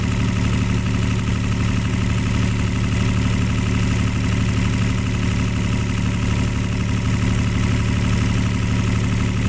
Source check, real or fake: real